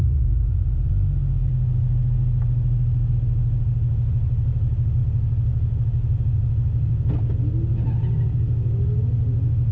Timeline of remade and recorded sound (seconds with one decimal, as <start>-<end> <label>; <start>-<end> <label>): 0.0-0.9 remade; 0.9-9.7 recorded